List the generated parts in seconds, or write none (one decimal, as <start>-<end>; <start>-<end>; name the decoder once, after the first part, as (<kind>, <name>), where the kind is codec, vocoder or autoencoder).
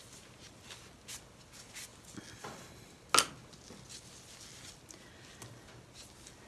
none